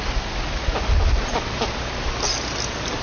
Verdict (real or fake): real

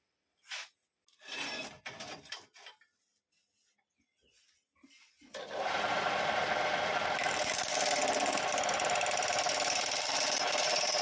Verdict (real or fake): real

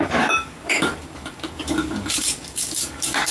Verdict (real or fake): fake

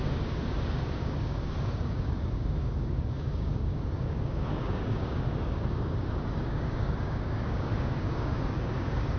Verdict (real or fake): fake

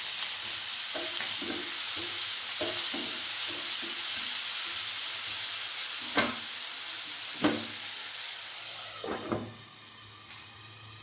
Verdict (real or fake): real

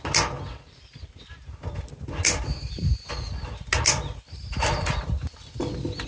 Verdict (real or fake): real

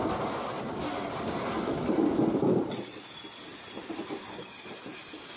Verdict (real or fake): real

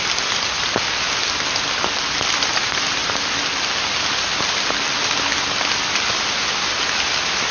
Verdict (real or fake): real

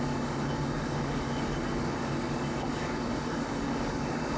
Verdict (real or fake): fake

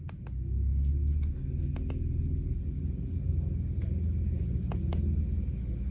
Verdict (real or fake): real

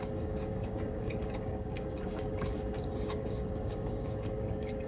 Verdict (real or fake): fake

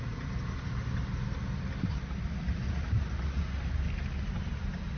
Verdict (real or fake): real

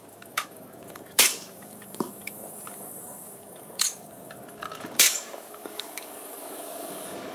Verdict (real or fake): fake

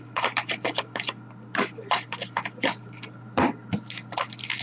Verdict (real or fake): real